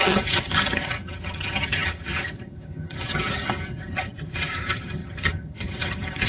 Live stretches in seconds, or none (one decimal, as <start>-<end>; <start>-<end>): none

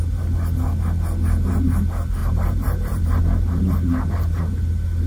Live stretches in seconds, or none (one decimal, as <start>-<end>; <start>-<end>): 0.0-2.2; 3.2-5.1

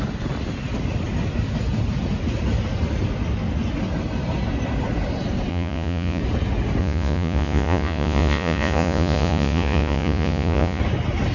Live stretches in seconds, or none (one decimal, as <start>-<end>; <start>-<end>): 0.0-5.5; 6.2-6.8; 10.8-11.3

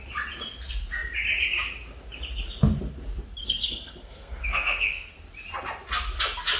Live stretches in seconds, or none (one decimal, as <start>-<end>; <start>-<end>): 0.0-3.4; 5.2-6.6

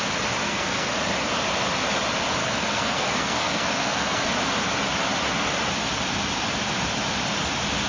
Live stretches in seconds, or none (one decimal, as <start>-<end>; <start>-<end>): 0.0-0.4; 0.9-2.4; 4.3-7.9